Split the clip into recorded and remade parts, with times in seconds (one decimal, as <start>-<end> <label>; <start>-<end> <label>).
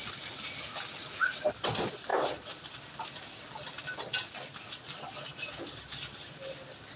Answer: 0.0-7.0 recorded